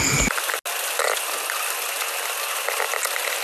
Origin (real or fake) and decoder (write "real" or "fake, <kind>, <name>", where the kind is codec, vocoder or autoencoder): real